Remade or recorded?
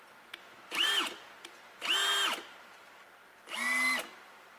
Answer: recorded